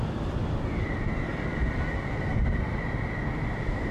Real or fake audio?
real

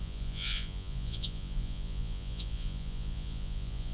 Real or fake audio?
fake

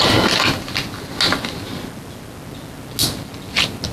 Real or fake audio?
real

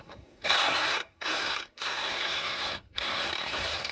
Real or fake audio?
fake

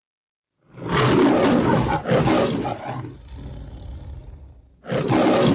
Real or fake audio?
real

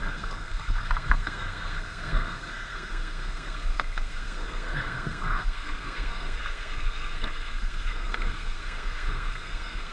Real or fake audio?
fake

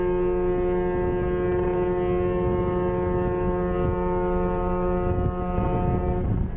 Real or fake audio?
real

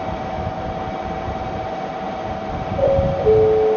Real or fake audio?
real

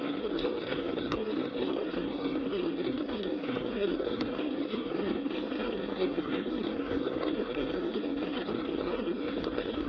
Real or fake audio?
fake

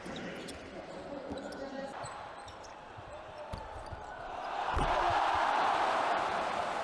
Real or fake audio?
fake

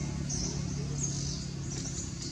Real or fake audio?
real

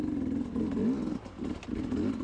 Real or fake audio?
real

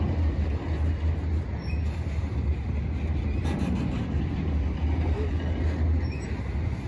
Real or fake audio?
real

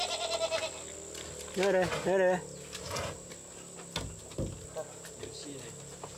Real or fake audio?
real